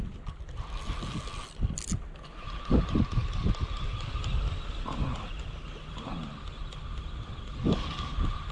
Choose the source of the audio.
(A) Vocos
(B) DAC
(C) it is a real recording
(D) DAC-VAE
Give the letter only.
C